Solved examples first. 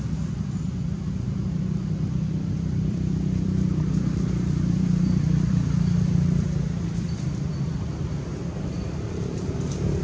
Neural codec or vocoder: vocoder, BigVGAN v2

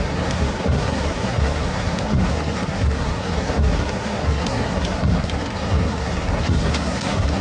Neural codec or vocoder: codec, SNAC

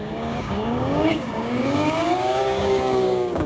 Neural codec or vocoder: codec, DAC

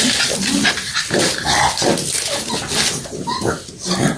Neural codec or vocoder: none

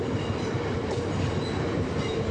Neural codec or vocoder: none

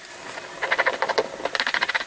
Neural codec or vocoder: none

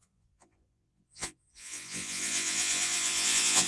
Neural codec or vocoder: vocoder, Vocos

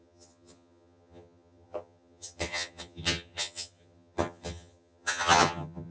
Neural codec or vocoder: vocoder, HiFi-GAN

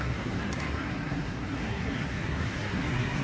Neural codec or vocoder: codec, SNAC